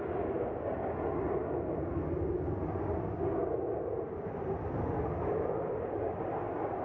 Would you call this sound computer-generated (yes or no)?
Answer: no